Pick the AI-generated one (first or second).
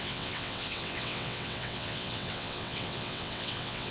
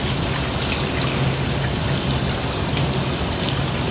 first